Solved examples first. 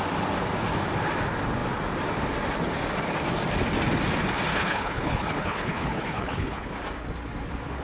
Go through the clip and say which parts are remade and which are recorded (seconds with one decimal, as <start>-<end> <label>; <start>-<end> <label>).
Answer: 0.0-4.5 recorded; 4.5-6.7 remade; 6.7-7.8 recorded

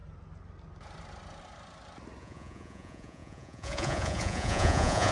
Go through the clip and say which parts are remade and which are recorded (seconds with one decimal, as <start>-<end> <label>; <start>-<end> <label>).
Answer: 0.0-2.2 recorded; 2.2-5.1 remade

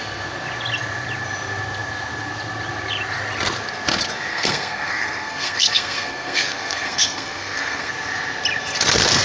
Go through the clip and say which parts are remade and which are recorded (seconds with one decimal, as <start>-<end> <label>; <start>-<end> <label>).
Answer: 0.0-4.3 recorded; 4.3-7.9 remade; 7.9-9.2 recorded

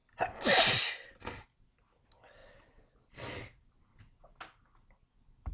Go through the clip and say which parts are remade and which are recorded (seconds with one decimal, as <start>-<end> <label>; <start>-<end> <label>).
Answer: 0.0-5.5 recorded